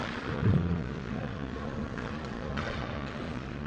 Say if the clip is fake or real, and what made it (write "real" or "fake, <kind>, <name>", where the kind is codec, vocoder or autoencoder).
fake, vocoder, Vocos